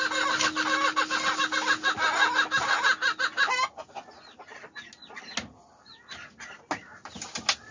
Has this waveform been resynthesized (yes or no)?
no